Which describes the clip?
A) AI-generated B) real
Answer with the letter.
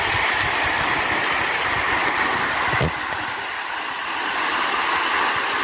B